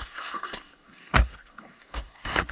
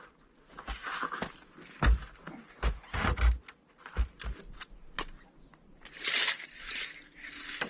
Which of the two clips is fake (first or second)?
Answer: first